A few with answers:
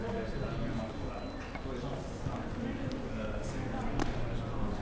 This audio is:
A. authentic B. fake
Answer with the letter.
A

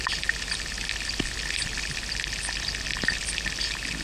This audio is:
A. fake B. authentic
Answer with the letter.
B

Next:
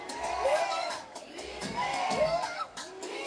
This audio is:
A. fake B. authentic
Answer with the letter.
A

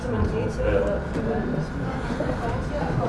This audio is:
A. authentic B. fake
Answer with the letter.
A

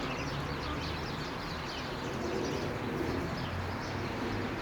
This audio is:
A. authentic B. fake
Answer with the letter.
A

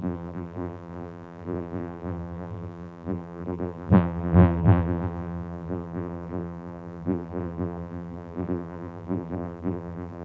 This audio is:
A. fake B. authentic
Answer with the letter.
A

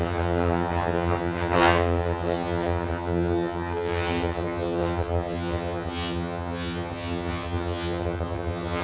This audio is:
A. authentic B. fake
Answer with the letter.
B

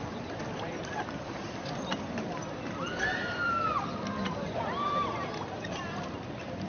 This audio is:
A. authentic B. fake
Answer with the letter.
B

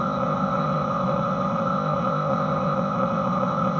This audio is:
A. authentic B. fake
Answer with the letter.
B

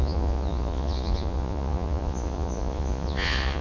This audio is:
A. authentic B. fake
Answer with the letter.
B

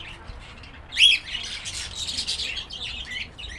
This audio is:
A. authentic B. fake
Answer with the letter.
A